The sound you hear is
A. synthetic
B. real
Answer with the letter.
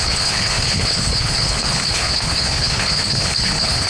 A